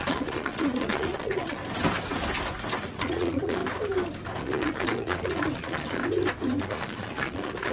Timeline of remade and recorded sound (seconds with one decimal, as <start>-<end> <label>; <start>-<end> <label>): 0.0-1.6 remade; 1.6-2.8 recorded; 2.8-3.6 remade; 3.6-4.4 recorded; 4.4-6.0 remade; 6.0-6.6 recorded; 6.6-7.7 remade